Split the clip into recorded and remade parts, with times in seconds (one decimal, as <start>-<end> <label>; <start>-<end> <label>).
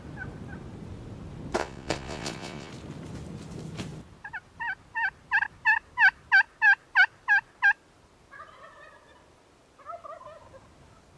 0.0-1.6 recorded; 1.6-2.7 remade; 2.7-11.2 recorded